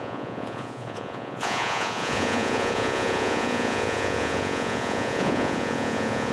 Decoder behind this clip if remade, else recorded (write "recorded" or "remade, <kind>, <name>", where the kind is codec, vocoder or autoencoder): remade, vocoder, Vocos